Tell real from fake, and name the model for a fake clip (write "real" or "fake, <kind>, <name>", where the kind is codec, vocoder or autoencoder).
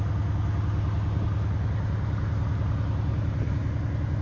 real